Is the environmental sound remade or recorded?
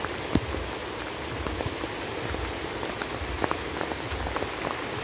recorded